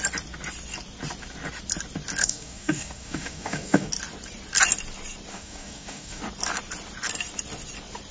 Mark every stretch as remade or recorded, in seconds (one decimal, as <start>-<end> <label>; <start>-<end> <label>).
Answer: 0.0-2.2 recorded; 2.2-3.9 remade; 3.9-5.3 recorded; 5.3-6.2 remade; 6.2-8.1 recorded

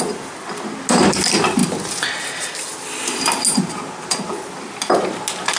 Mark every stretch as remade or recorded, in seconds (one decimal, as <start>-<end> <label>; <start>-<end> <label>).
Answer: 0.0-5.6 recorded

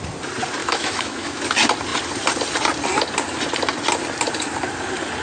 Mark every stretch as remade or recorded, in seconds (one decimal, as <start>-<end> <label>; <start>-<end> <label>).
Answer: 0.0-0.6 recorded; 0.6-1.4 remade; 1.4-5.2 recorded

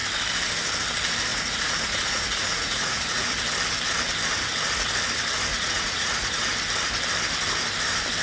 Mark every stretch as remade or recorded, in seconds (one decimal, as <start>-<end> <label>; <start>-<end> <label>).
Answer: 0.0-1.3 recorded; 1.3-3.3 remade; 3.3-5.5 recorded; 5.5-6.4 remade; 6.4-8.2 recorded

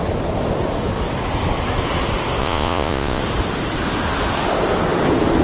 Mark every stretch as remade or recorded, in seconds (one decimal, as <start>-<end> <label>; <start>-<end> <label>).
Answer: 0.0-2.4 recorded; 2.4-3.2 remade; 3.2-5.4 recorded

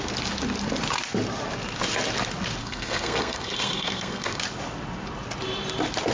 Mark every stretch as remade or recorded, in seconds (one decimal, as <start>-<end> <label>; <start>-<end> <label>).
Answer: 0.0-2.6 recorded; 2.6-4.4 remade; 4.4-6.1 recorded